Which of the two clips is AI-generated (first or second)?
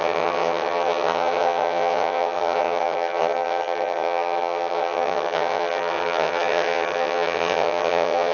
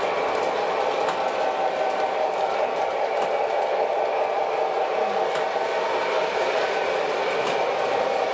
first